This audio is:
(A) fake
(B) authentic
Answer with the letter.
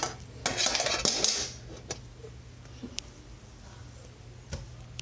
B